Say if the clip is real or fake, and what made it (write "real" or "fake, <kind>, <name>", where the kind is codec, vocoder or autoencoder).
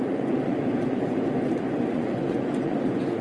fake, vocoder, Vocos